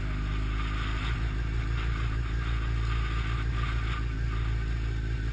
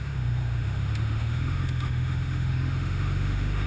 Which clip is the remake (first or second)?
second